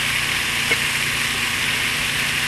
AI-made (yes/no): no